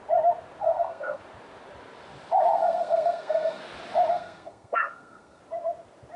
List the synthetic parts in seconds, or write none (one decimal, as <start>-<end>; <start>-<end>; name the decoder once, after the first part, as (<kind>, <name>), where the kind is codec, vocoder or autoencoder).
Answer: 0.6-1.2 (codec, SNAC); 2.5-3.6; 4.1-5.4